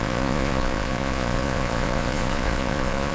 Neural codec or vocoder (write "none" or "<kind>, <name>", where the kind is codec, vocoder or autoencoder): vocoder, Vocos